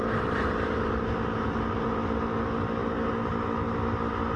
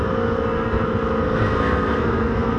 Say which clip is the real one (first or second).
first